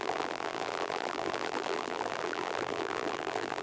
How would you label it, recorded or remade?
remade